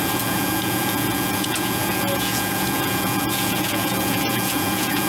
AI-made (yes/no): yes